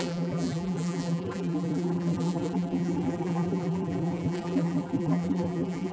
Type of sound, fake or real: fake